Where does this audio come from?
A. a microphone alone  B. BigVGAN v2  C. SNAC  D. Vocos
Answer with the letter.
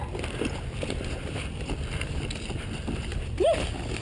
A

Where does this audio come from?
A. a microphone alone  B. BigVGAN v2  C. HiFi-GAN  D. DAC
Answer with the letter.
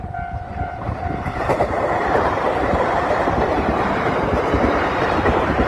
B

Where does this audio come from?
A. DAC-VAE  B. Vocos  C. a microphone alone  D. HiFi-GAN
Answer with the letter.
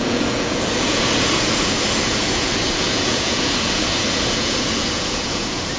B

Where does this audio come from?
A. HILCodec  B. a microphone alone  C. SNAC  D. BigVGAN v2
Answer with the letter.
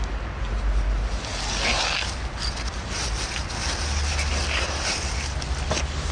B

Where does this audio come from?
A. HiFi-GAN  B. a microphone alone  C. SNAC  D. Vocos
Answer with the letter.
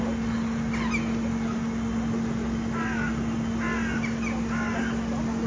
B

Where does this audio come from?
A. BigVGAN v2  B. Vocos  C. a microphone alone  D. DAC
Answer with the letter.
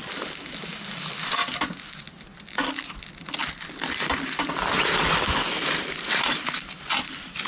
C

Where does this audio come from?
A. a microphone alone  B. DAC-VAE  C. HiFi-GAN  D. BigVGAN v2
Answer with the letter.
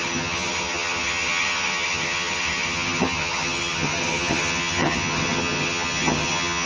C